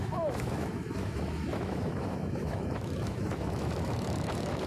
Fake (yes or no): yes